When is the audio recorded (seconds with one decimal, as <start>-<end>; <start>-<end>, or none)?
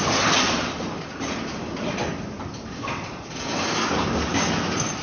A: 0.0-2.1; 2.8-5.0